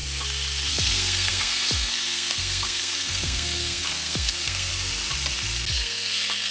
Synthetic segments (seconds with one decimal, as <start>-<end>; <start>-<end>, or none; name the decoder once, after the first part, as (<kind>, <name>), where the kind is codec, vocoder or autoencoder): 0.7-4.7 (codec, SNAC); 5.7-6.5